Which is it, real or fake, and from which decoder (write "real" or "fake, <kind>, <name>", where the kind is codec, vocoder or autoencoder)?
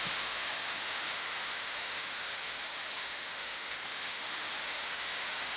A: fake, autoencoder, DAC-VAE